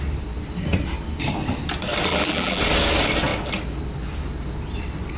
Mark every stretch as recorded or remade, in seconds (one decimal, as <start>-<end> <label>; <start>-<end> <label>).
0.0-2.1 recorded; 2.1-2.6 remade; 2.6-5.2 recorded

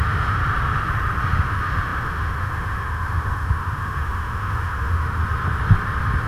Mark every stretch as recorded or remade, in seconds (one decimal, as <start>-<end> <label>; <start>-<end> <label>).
0.0-0.4 remade; 0.4-1.3 recorded; 1.3-5.2 remade; 5.2-6.3 recorded

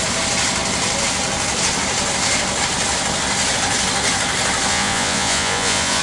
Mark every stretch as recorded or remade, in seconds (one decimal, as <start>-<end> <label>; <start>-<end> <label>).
0.0-4.7 recorded; 4.7-6.0 remade

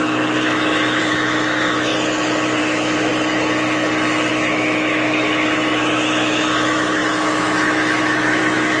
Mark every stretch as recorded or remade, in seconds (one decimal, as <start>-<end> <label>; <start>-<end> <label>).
0.0-1.9 remade; 1.9-2.6 recorded; 2.6-3.1 remade; 3.1-4.3 recorded; 4.3-8.8 remade

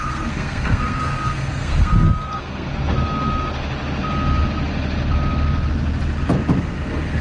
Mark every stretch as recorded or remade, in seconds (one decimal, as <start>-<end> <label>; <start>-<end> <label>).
0.0-2.7 remade; 2.7-6.6 recorded; 6.6-7.2 remade

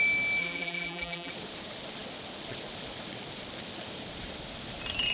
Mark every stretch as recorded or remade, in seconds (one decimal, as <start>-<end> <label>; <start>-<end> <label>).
0.0-0.4 recorded; 0.4-1.3 remade; 1.3-5.1 recorded

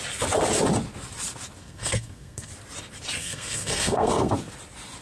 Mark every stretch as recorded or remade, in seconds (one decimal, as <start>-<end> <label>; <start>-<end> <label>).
0.0-1.6 recorded; 1.6-2.5 remade; 2.5-3.2 recorded; 3.2-4.3 remade; 4.3-5.0 recorded

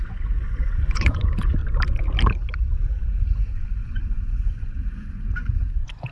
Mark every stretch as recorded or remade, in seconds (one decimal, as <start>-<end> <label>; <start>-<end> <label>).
0.0-1.6 remade; 1.6-3.3 recorded; 3.3-6.1 remade